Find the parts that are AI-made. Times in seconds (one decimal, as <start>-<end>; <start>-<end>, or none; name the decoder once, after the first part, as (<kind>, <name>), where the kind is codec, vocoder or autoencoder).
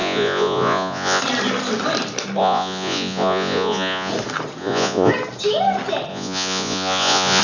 0.0-1.2 (vocoder, Vocos); 2.4-4.1; 4.6-5.1; 6.1-7.4